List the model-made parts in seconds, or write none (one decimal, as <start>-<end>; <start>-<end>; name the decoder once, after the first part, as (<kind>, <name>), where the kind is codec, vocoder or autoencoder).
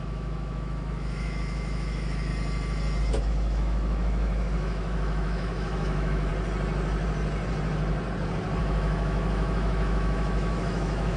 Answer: 0.0-2.3 (autoencoder, DAC-VAE); 3.1-6.3; 8.6-11.2